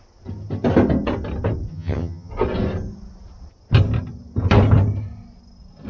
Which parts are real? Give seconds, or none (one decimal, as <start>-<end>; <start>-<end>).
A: 0.0-1.7; 2.3-5.9